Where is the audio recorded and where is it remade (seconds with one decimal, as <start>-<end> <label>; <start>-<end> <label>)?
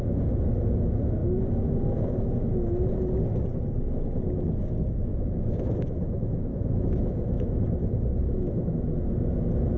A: 0.0-1.2 recorded; 1.2-2.5 remade; 2.5-5.1 recorded; 5.1-7.6 remade; 7.6-8.2 recorded; 8.2-9.0 remade; 9.0-9.8 recorded